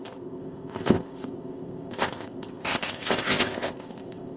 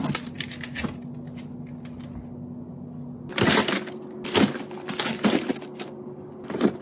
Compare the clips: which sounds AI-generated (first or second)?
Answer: first